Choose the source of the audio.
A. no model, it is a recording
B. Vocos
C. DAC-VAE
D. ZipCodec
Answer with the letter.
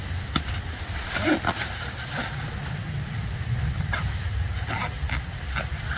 A